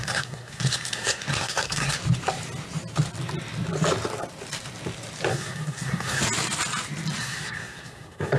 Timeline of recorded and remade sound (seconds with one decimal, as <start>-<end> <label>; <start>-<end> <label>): 0.0-2.0 remade; 2.0-5.3 recorded; 5.3-6.2 remade; 6.2-7.2 recorded; 7.2-8.4 remade